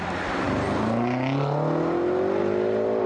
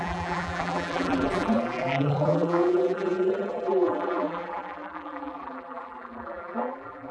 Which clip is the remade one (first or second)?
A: second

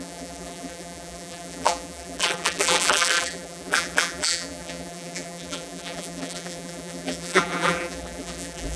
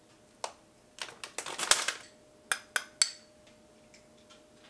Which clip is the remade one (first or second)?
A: first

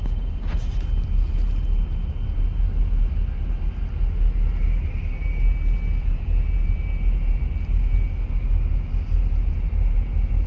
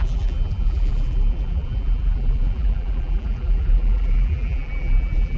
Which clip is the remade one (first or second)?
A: second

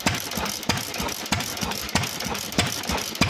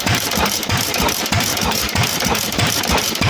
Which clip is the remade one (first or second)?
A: second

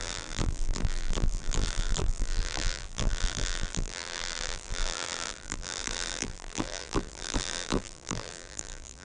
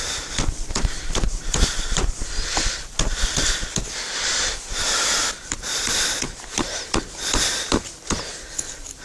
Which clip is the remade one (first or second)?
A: first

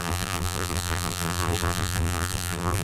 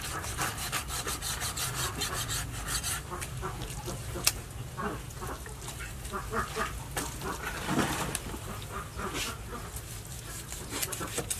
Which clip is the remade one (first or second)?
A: first